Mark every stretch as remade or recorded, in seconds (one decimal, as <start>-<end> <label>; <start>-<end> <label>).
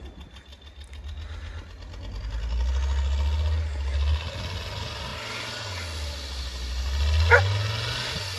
0.0-8.4 recorded